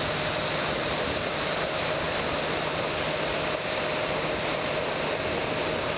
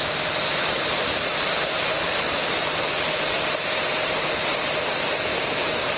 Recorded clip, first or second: first